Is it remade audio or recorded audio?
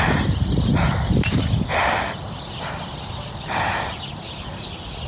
recorded